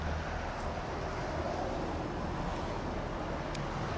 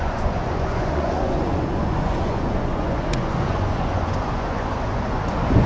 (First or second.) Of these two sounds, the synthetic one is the second